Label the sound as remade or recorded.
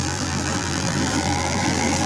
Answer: remade